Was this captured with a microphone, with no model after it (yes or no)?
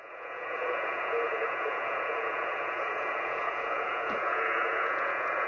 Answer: no